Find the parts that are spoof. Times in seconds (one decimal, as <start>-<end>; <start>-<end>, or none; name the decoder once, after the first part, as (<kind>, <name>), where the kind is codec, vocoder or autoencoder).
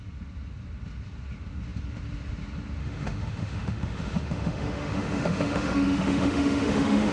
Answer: 2.8-7.1 (autoencoder, DAC-VAE)